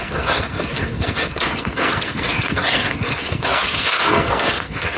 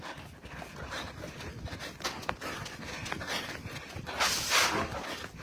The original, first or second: second